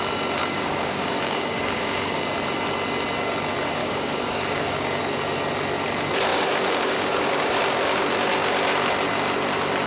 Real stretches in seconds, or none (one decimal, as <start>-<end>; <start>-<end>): 0.0-0.4; 2.2-3.8; 5.0-6.3; 7.6-9.9